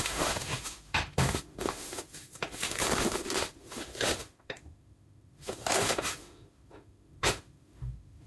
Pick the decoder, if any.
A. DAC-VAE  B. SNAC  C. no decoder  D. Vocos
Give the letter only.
A